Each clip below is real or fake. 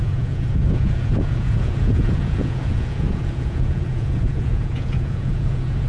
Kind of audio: fake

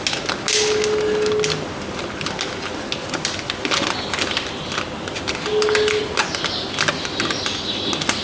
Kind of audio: real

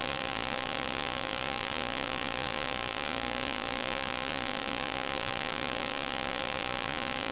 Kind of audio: fake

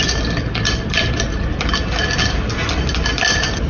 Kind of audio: real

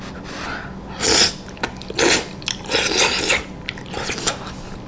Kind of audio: real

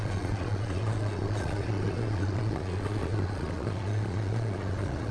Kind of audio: fake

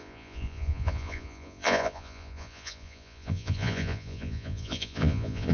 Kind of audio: fake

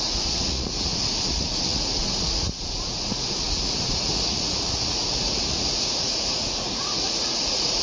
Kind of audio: fake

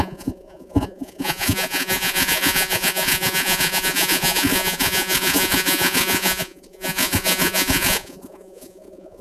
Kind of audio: fake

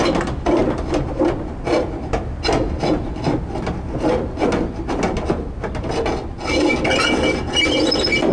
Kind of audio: real